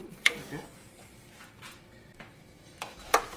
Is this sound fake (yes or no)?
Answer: yes